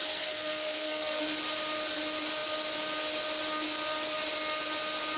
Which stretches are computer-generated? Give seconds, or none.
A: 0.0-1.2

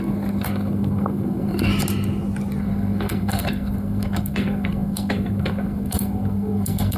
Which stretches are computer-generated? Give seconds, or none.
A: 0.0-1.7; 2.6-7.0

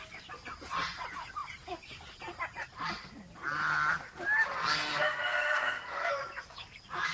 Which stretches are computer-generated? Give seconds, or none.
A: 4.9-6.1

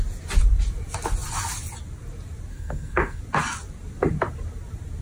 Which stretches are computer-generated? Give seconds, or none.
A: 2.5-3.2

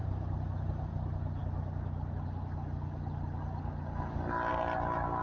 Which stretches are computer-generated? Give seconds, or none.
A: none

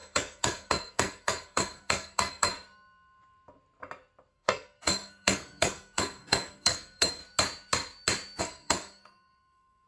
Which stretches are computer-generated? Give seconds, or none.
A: 0.0-2.5; 4.3-7.2; 8.4-9.9